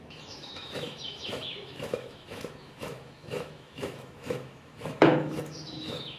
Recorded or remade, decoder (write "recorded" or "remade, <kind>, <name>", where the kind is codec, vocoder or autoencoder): remade, autoencoder, DAC-VAE